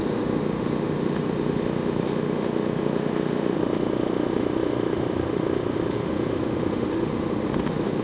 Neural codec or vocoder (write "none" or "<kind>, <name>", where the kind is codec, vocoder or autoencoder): autoencoder, DAC-VAE